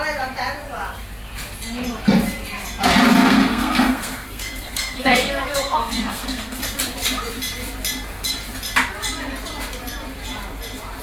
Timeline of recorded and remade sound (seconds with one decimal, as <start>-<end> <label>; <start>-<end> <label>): 0.0-3.2 recorded; 3.2-6.6 remade; 6.6-11.0 recorded